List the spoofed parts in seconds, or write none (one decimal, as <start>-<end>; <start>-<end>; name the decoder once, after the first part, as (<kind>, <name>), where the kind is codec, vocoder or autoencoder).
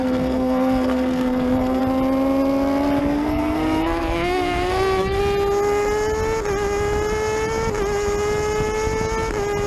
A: 0.0-1.8 (codec, SNAC); 3.0-5.2